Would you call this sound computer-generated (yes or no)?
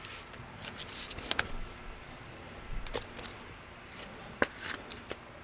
no